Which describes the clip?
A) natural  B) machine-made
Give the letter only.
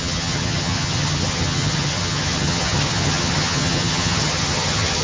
B